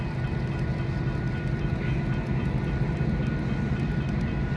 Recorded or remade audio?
recorded